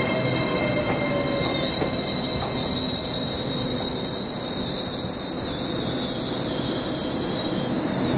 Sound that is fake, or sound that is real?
real